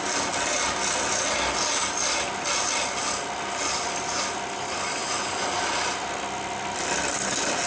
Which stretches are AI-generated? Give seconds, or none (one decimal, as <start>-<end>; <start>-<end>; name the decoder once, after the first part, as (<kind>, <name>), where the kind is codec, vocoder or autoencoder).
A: none